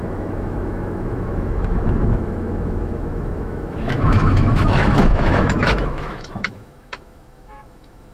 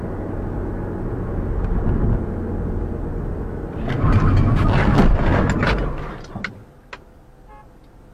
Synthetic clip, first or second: first